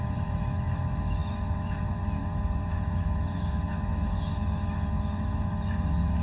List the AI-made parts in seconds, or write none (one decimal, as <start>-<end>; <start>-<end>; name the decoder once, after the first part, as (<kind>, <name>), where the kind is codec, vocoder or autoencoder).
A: 0.0-6.2 (autoencoder, DAC-VAE)